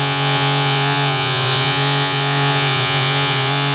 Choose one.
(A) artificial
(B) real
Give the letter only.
A